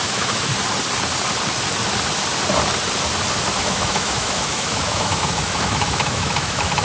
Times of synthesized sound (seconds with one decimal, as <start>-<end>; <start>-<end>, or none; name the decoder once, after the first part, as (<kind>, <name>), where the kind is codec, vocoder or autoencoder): 0.0-0.5 (autoencoder, DAC-VAE); 3.6-6.8